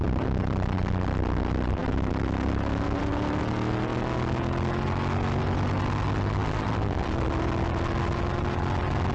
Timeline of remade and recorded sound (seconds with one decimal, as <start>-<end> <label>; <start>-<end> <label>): 0.0-9.1 recorded